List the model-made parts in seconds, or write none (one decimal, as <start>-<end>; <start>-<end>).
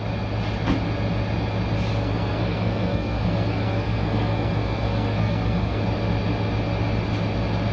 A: 1.9-5.8